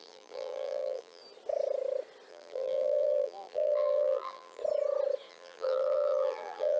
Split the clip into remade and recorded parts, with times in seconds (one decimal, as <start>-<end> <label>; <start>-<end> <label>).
0.0-1.2 remade; 1.2-2.3 recorded; 2.3-4.6 remade; 4.6-5.3 recorded; 5.3-6.8 remade